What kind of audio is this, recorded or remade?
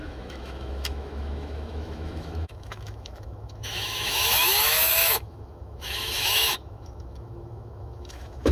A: remade